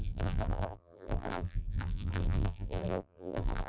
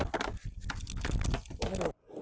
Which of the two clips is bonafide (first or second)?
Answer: second